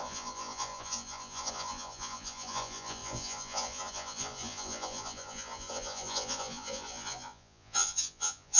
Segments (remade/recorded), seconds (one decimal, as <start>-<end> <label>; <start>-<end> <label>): 0.0-8.6 remade